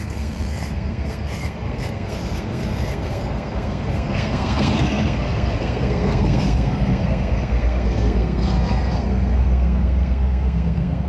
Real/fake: fake